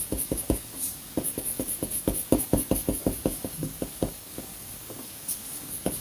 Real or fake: fake